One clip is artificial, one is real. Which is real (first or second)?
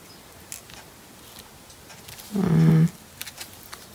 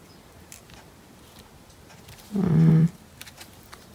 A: first